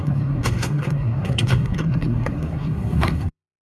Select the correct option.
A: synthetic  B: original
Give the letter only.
A